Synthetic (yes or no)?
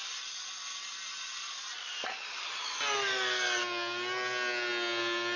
no